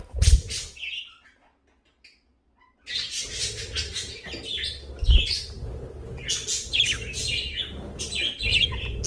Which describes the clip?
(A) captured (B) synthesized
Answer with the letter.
A